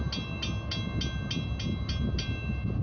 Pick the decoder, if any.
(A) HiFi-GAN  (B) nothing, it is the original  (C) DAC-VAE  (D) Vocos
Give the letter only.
B